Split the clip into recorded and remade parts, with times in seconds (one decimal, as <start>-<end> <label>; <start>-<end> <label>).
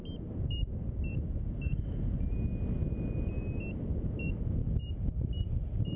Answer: 0.0-6.0 recorded